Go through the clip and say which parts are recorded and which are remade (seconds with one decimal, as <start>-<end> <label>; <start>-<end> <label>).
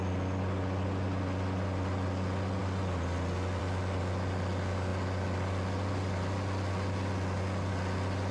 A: 0.0-8.3 recorded